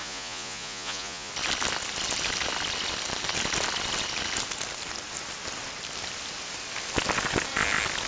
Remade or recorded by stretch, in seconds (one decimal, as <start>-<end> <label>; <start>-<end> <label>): 0.0-1.3 remade; 1.3-8.1 recorded